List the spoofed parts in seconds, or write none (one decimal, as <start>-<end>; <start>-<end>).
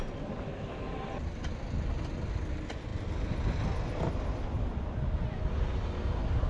none